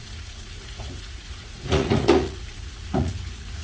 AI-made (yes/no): yes